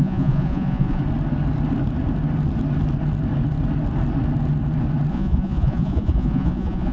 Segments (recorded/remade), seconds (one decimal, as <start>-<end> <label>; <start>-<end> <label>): 0.0-1.0 remade; 1.0-5.1 recorded; 5.1-6.9 remade

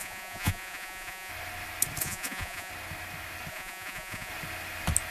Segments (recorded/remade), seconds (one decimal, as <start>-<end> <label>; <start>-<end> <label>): 0.0-1.3 remade; 1.3-2.0 recorded; 2.0-2.7 remade; 2.7-3.5 recorded; 3.5-4.3 remade; 4.3-5.1 recorded

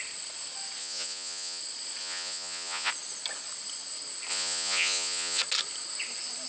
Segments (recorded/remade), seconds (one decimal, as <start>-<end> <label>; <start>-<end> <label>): 0.0-0.8 recorded; 0.8-1.6 remade; 1.6-2.0 recorded; 2.0-2.9 remade; 2.9-4.3 recorded; 4.3-5.4 remade; 5.4-6.5 recorded